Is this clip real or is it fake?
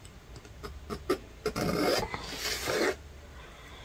real